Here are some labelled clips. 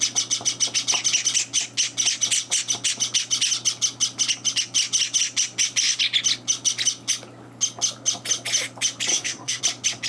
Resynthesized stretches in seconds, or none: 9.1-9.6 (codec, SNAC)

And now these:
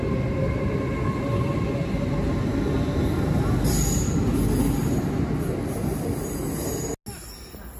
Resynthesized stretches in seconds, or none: none

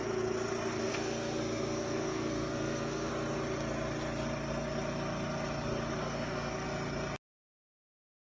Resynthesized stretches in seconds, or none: 0.8-3.1 (codec, SNAC); 6.0-6.5

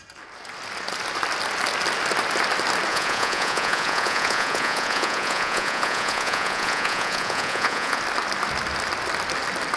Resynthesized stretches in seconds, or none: 2.9-8.0 (vocoder, Vocos)